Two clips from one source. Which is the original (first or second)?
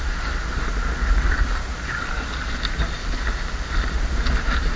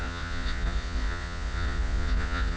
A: first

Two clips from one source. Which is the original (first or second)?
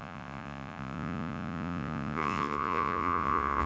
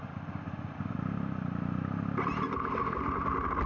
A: second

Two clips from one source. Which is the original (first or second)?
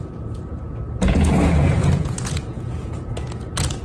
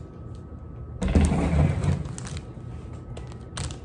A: second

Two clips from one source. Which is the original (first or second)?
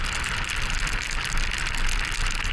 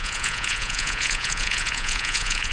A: first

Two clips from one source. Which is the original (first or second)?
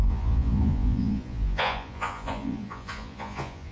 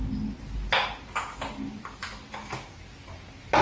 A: second